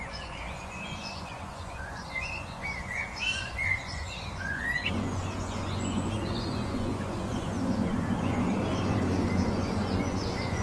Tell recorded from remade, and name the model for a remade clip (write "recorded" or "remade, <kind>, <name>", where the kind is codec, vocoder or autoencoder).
remade, vocoder, Vocos